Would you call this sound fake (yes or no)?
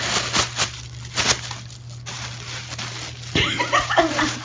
no